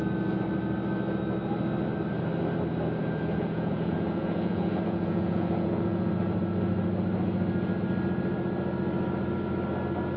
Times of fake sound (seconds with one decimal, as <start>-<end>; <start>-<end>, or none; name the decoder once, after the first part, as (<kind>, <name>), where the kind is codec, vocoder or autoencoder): 3.0-6.1 (vocoder, Vocos)